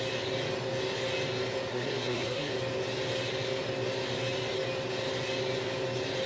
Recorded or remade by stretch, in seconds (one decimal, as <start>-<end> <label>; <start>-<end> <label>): 0.0-1.7 recorded; 1.7-2.5 remade; 2.5-6.3 recorded